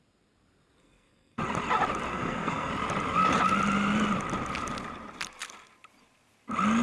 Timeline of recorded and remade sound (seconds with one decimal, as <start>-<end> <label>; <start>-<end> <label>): 0.0-0.8 recorded; 0.8-1.4 remade; 1.4-2.1 recorded; 2.1-2.7 remade; 2.7-6.8 recorded